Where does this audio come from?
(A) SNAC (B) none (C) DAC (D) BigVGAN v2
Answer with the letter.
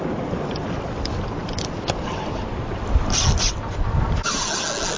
B